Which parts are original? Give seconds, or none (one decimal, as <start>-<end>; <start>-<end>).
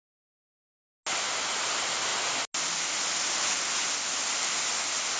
0.0-5.2